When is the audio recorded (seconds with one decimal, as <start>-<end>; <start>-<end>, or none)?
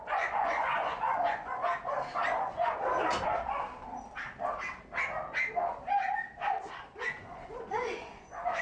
1.6-2.4; 2.9-7.0